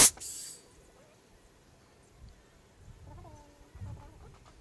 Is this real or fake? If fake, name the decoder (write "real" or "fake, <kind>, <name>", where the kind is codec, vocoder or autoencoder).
real